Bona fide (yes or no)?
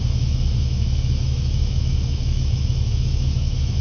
no